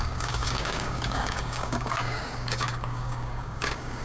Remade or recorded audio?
remade